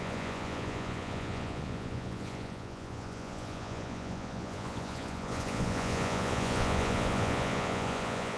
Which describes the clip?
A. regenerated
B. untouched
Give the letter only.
A